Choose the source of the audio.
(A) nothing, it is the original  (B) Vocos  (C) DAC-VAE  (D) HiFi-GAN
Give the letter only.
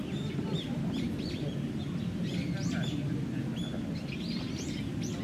A